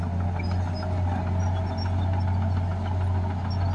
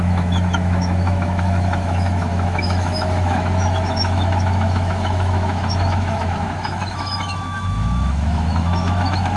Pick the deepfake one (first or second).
second